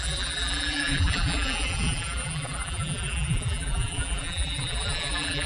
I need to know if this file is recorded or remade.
remade